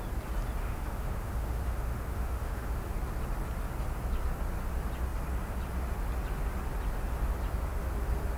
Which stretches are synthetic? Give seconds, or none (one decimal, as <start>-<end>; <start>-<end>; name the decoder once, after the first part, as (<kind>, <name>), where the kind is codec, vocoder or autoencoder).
0.6-2.9 (autoencoder, DAC-VAE)